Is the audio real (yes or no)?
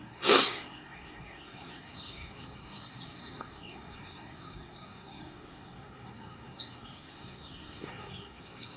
no